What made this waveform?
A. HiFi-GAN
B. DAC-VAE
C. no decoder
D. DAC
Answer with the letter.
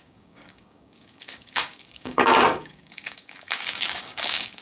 D